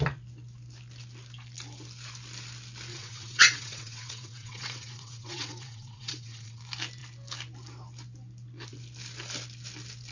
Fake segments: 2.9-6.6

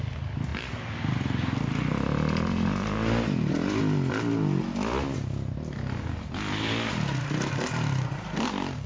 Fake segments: none

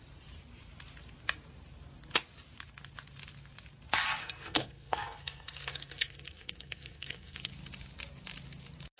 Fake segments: 4.2-7.5

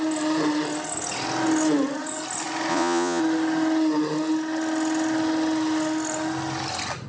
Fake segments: 2.7-3.2

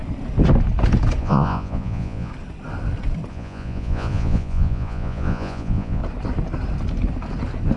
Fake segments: 1.2-2.3; 3.3-6.0

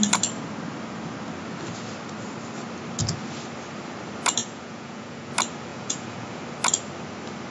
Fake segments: 4.4-5.3; 5.7-6.4